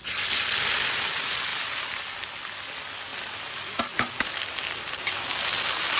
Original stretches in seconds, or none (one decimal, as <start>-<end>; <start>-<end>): 0.0-6.0